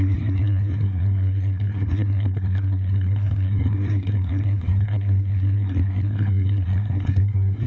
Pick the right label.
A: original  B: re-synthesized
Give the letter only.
B